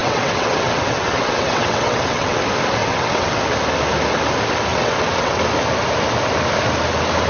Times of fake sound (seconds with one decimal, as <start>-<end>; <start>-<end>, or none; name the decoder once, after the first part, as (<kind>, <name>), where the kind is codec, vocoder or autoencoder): 0.0-2.4 (vocoder, WaveNeXt); 2.8-3.4; 4.7-5.4